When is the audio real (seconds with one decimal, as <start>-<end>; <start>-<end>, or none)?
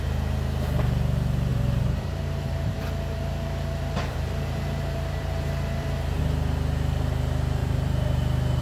0.0-1.5; 6.2-7.6; 8.2-8.6